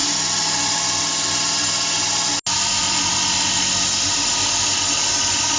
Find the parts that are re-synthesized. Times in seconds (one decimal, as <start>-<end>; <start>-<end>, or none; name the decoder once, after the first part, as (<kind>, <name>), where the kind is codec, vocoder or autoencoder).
none